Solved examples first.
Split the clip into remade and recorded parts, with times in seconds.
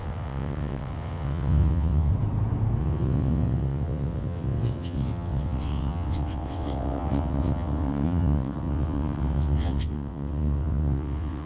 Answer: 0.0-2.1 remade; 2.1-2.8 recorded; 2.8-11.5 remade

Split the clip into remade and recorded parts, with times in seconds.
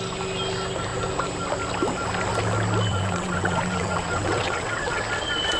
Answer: 0.0-2.9 recorded; 2.9-5.0 remade; 5.0-5.6 recorded